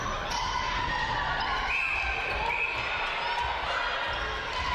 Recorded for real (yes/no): yes